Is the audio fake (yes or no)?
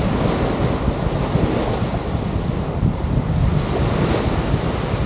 no